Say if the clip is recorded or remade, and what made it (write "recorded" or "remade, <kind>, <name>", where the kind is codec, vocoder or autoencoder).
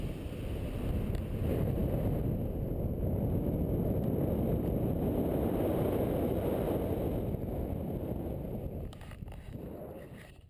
recorded